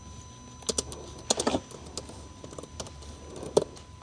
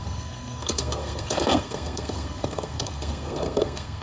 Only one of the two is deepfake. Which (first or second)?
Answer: second